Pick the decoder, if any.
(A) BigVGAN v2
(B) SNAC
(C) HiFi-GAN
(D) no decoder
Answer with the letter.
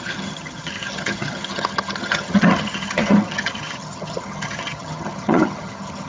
C